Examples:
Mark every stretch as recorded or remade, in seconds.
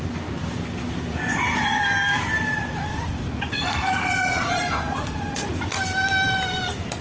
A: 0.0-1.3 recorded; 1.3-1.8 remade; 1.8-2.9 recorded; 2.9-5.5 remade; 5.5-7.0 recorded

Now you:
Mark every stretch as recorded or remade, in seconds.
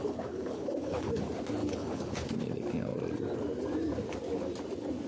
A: 0.0-1.2 remade; 1.2-1.6 recorded; 1.6-2.3 remade; 2.3-5.1 recorded